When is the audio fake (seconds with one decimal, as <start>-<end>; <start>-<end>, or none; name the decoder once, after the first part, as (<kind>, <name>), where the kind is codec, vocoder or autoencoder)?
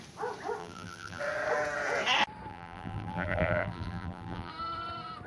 0.6-1.2 (vocoder, BigVGAN v2); 2.5-4.5